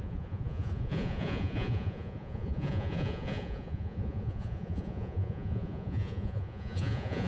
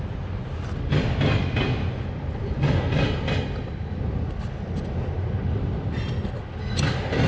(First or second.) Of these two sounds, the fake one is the first